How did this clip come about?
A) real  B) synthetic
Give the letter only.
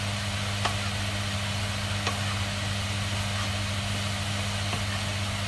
A